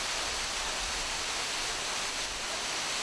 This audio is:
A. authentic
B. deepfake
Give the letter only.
A